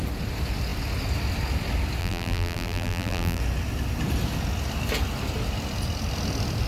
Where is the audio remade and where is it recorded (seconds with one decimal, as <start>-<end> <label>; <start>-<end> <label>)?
0.0-2.0 recorded; 2.0-3.4 remade; 3.4-6.7 recorded